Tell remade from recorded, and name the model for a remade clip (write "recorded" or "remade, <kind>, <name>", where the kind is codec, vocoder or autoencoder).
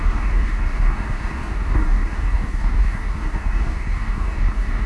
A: remade, codec, DAC